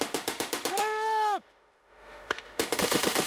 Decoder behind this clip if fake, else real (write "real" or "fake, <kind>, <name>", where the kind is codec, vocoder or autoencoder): fake, autoencoder, DAC-VAE